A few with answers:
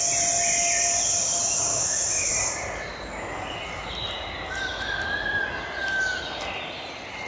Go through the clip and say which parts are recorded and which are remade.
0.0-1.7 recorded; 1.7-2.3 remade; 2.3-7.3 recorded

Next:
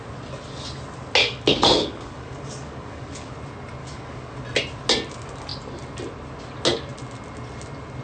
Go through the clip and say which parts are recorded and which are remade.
0.0-1.2 recorded; 1.2-3.3 remade; 3.3-3.8 recorded; 3.8-4.4 remade; 4.4-8.0 recorded